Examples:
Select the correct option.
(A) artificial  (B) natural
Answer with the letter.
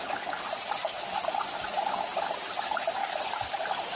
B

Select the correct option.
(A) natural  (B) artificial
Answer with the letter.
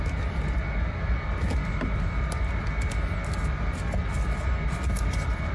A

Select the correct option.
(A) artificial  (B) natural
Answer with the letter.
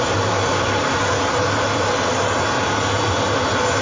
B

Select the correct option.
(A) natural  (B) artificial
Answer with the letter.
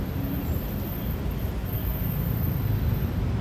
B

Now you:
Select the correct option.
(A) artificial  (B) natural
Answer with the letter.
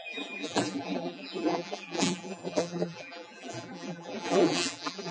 A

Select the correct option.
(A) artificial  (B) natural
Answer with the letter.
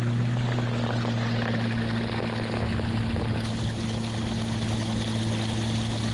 B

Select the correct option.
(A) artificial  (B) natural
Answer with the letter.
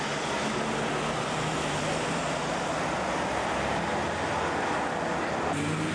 B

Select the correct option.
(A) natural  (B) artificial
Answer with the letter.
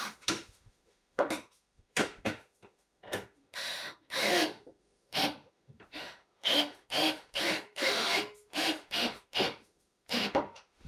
B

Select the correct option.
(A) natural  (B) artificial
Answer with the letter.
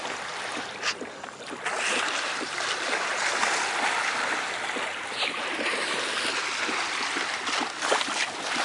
A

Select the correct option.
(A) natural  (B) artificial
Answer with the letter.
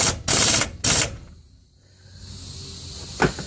A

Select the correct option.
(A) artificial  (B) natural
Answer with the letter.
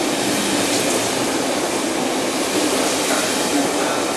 B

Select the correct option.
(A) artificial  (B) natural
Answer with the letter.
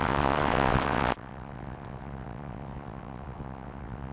A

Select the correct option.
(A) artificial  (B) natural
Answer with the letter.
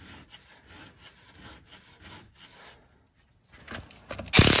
B